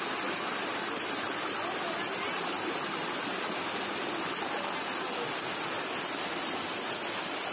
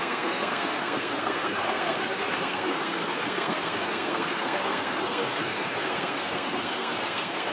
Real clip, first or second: first